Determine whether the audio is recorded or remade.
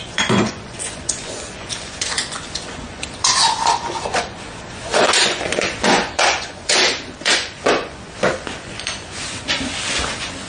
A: remade